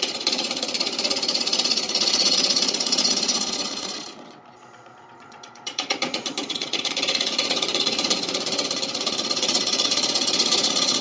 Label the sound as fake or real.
fake